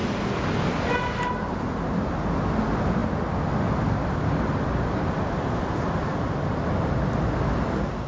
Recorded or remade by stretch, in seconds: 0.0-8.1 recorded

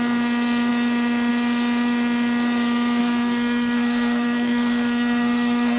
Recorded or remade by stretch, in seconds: 0.0-3.0 recorded; 3.0-5.8 remade